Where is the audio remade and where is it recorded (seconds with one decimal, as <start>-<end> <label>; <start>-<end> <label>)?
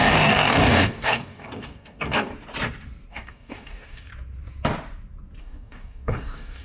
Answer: 0.0-2.3 remade; 2.3-3.1 recorded; 3.1-4.1 remade; 4.1-5.4 recorded; 5.4-6.6 remade